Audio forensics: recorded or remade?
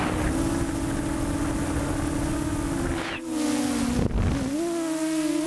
recorded